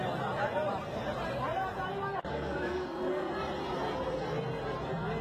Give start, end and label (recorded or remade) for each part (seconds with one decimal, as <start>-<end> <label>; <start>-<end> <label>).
0.0-2.3 recorded; 2.3-3.3 remade; 3.3-5.2 recorded